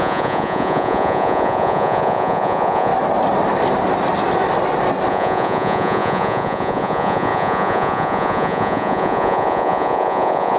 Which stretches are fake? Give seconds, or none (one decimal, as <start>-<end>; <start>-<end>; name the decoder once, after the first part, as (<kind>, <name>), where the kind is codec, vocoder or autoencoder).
0.0-2.9 (vocoder, Vocos); 5.1-10.6